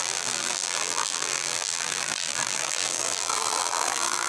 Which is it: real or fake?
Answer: fake